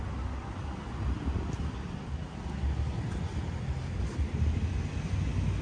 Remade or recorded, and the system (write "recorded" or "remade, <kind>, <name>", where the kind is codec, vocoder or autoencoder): recorded